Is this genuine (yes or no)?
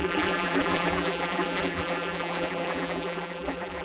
no